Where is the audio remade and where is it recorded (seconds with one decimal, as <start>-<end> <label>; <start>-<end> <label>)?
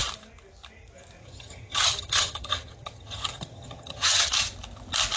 0.0-1.2 recorded; 1.2-4.3 remade; 4.3-5.2 recorded